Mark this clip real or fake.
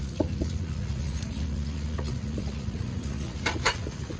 fake